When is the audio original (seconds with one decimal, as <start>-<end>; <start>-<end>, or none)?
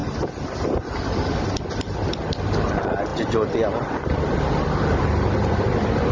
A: 0.0-6.1